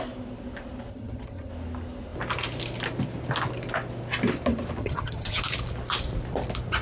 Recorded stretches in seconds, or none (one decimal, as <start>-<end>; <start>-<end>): 0.0-0.9; 1.5-4.8; 5.4-6.8